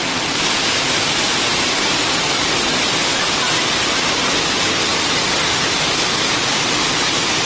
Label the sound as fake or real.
real